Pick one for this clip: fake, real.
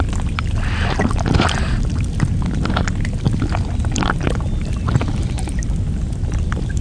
real